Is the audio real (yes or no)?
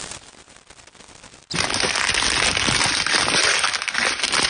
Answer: yes